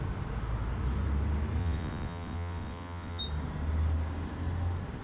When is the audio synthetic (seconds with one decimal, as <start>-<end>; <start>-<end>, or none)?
1.6-3.2